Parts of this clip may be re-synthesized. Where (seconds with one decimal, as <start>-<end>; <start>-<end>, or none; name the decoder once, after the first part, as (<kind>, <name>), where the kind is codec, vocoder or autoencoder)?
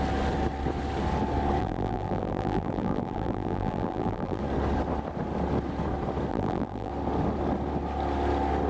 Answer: 1.6-4.4 (vocoder, BigVGAN v2); 6.3-6.9